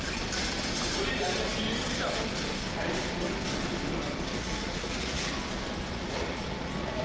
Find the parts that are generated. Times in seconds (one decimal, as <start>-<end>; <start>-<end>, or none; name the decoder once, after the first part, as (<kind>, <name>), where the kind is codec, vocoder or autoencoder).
4.4-5.4 (vocoder, Vocos); 5.9-7.0